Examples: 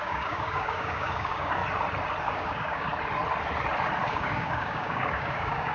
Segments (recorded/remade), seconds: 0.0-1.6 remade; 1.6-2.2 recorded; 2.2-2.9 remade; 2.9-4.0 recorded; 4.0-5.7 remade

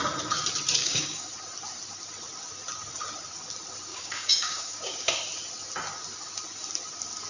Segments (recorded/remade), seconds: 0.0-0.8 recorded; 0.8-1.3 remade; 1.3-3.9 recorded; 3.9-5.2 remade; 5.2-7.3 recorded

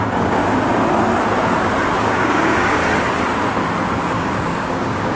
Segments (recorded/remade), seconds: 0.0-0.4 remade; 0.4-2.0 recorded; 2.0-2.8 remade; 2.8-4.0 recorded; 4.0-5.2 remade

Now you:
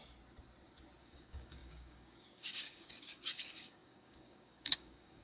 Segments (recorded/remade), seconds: 0.0-1.0 recorded; 1.0-5.2 remade

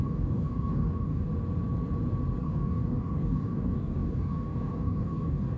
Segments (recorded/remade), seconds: 0.0-1.3 remade; 1.3-2.4 recorded; 2.4-5.6 remade